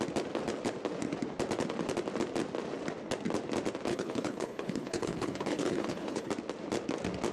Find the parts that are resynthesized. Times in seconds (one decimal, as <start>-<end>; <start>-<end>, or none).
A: 3.9-6.3

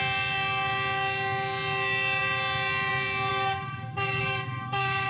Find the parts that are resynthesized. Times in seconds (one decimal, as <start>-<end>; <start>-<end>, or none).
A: 3.3-5.1

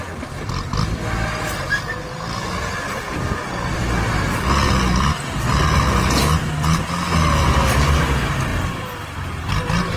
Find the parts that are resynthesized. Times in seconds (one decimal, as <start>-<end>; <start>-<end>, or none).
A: 7.4-7.9

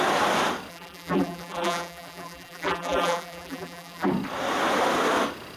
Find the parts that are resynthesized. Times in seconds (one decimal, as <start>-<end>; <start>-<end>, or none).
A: 0.7-4.1